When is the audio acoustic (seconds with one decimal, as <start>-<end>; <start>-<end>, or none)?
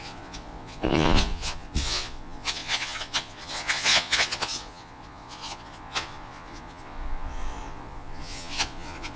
none